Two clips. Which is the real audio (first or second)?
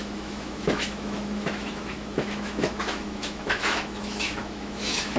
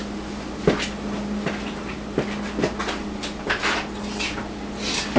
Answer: second